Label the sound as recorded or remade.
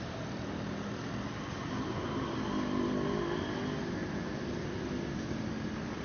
recorded